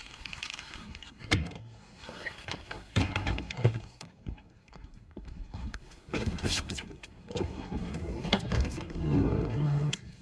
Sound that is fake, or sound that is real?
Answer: fake